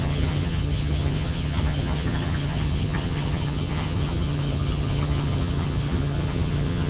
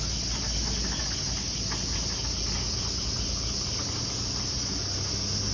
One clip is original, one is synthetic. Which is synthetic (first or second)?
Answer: first